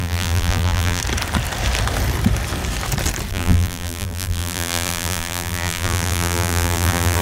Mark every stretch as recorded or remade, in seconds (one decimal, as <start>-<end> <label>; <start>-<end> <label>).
0.0-1.0 remade; 1.0-3.3 recorded; 3.3-7.2 remade